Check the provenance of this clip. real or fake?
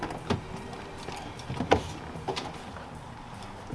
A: real